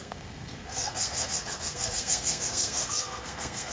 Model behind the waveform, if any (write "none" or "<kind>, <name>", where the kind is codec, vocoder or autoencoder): codec, SNAC